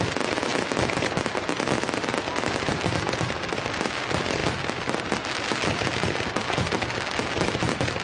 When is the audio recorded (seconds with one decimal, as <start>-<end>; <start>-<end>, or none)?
0.0-8.0